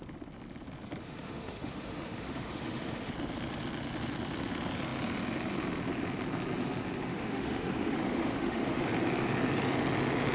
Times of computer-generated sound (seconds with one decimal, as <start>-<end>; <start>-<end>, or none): 1.0-3.1; 7.1-8.8